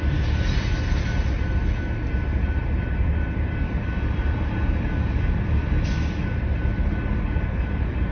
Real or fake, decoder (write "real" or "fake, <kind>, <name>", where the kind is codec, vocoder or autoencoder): real